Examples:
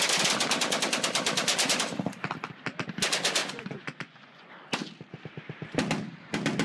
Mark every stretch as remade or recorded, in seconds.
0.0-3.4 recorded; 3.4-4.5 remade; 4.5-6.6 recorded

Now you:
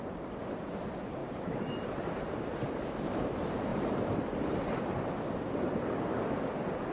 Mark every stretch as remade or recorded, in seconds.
0.0-1.2 recorded; 1.2-2.1 remade; 2.1-3.7 recorded; 3.7-4.7 remade; 4.7-6.9 recorded

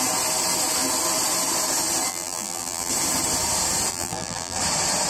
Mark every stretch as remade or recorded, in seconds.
0.0-2.1 recorded; 2.1-2.9 remade; 2.9-3.9 recorded; 3.9-4.6 remade; 4.6-5.1 recorded